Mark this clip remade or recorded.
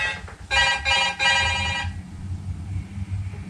recorded